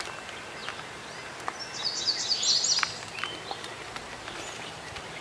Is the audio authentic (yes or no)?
yes